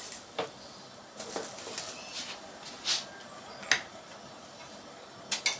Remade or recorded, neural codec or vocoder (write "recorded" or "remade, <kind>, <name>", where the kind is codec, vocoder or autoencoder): recorded